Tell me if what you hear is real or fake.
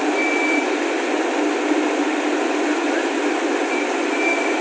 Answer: real